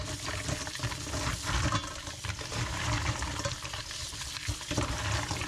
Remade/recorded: recorded